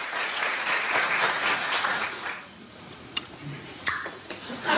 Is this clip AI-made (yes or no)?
yes